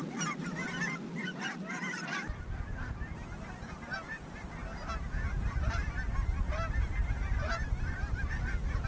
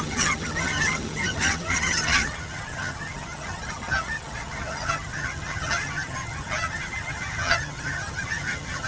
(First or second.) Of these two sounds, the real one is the first